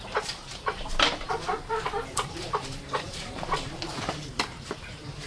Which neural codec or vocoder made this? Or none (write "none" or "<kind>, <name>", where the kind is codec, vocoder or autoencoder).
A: vocoder, BigVGAN v2